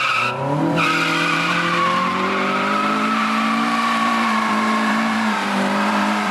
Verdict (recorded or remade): remade